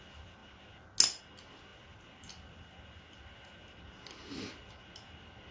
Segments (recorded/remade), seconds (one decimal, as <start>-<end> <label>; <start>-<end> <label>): 0.0-5.5 recorded